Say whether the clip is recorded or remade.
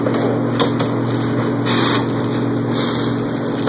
recorded